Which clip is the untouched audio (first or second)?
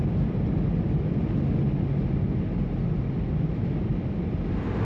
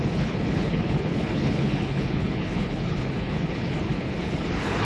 first